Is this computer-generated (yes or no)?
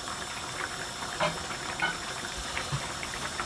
yes